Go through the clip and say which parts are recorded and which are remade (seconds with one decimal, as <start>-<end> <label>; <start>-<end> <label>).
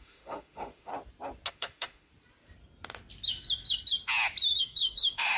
0.0-0.9 remade; 0.9-1.5 recorded; 1.5-2.1 remade; 2.1-4.6 recorded; 4.6-5.4 remade